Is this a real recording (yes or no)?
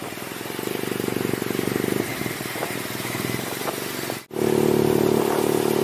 yes